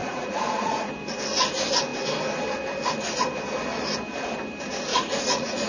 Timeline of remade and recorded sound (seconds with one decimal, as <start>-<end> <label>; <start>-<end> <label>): 0.0-0.9 remade; 0.9-4.9 recorded; 4.9-5.7 remade